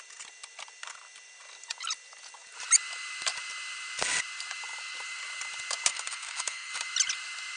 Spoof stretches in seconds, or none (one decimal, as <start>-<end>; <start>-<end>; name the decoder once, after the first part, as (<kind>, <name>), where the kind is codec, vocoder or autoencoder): 5.9-6.7 (codec, SNAC)